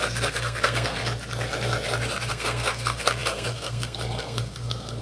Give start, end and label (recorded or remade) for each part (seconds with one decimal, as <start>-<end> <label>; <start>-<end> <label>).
0.0-1.0 remade; 1.0-2.3 recorded; 2.3-5.0 remade